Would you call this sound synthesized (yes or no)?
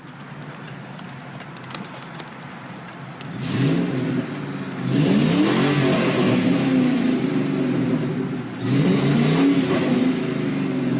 no